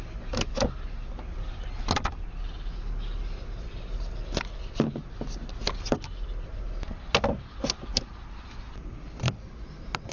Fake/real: real